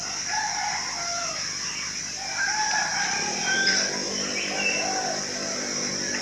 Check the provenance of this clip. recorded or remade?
recorded